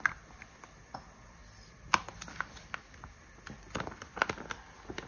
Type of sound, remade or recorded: recorded